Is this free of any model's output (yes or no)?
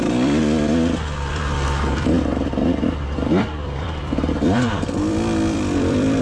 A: no